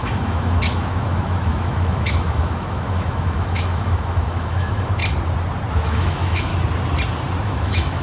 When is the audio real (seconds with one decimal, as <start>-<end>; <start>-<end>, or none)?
5.0-5.7; 6.5-7.4